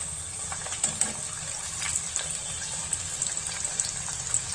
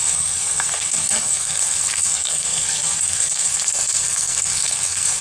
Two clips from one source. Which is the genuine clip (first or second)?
first